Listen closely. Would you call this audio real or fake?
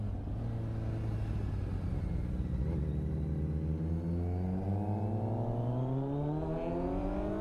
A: real